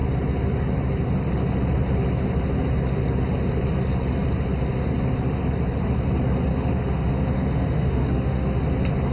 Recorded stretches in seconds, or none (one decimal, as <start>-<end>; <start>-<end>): 0.0-6.5; 8.6-9.1